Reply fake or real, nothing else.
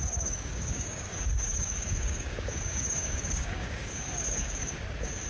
fake